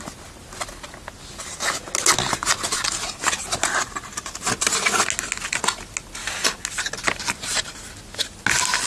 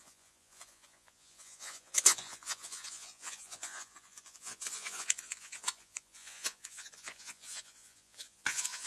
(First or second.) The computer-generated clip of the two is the second